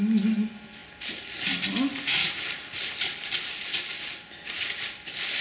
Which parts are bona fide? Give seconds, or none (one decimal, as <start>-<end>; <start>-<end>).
0.0-5.4